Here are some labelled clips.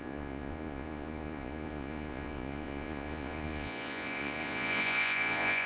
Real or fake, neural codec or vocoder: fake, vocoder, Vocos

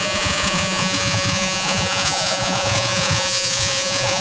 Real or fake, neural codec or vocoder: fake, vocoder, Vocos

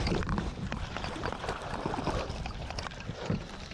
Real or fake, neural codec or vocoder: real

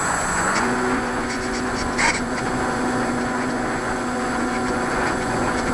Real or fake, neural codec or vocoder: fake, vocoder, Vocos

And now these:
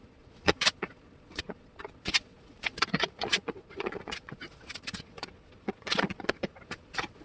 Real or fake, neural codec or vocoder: fake, vocoder, Vocos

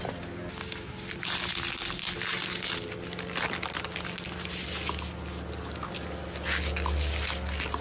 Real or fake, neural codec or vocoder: real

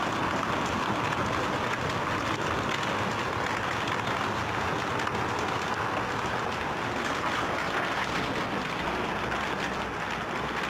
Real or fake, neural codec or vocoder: real